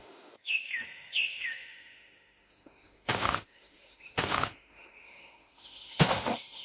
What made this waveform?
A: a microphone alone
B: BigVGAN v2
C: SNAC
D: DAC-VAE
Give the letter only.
D